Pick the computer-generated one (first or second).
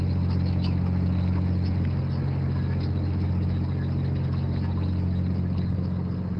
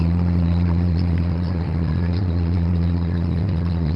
second